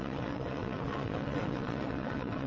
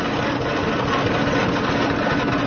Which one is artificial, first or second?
first